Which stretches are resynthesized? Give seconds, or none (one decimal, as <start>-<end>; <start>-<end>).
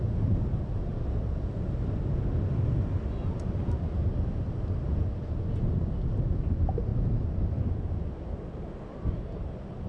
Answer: none